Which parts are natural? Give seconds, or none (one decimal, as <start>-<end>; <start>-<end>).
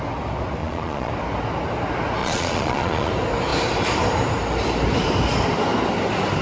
0.0-0.6; 1.1-2.2; 3.1-6.4